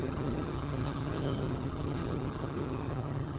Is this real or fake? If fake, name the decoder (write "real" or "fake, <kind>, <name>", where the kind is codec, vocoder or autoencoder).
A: fake, vocoder, HiFi-GAN